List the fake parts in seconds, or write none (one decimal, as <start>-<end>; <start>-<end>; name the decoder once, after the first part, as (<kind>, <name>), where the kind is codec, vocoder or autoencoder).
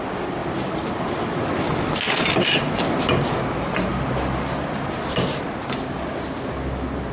none